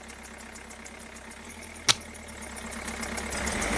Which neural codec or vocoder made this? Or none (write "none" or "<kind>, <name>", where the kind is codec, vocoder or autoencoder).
none